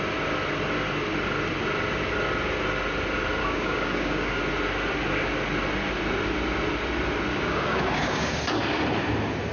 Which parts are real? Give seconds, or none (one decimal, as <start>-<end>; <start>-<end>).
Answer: 0.0-3.4; 4.4-7.3; 8.4-9.5